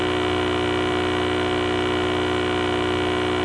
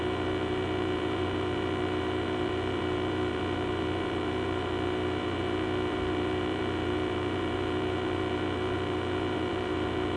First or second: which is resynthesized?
second